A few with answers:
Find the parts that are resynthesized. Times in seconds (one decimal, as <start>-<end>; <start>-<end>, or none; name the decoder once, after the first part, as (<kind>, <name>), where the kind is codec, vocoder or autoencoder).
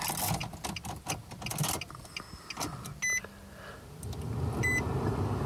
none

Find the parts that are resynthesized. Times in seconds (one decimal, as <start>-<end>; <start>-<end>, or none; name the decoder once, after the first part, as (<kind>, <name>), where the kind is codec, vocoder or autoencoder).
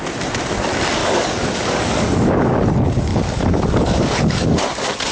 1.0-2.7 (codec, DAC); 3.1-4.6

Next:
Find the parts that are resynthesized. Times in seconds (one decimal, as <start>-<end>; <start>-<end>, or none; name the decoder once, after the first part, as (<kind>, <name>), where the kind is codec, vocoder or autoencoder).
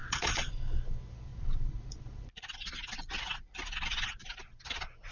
0.0-0.5 (vocoder, Vocos); 1.3-4.4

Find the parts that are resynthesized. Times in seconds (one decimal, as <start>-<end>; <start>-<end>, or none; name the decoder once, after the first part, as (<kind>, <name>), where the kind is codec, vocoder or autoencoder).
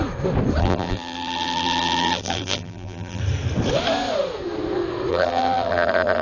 0.6-3.2 (vocoder, BigVGAN v2); 5.1-6.2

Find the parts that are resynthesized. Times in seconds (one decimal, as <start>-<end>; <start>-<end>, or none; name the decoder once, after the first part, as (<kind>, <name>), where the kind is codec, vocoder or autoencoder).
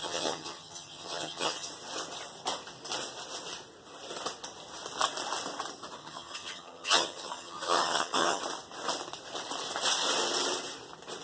0.0-1.7 (vocoder, HiFi-GAN); 6.0-8.4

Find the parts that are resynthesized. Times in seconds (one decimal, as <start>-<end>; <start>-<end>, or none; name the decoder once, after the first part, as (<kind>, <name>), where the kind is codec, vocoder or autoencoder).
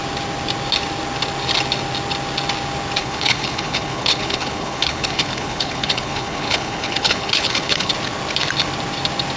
3.0-7.9 (codec, HILCodec)